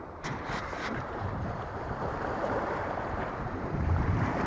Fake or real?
fake